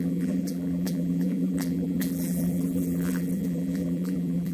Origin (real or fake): fake